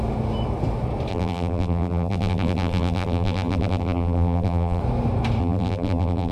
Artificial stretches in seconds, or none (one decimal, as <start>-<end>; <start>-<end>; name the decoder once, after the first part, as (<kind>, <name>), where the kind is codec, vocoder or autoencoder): 1.1-4.8 (vocoder, BigVGAN v2); 5.4-6.3